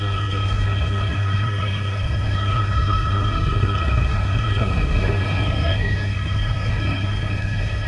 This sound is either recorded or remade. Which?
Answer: remade